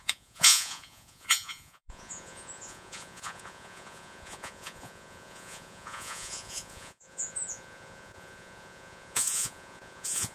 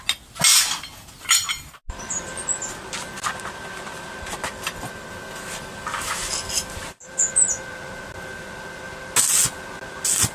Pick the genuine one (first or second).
second